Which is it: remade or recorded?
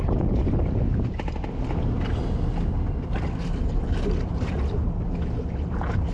recorded